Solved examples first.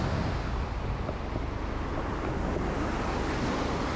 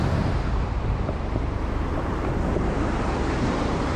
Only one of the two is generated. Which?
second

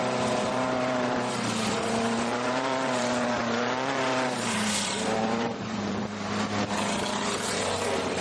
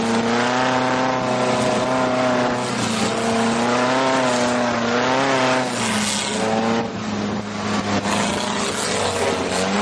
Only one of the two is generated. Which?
first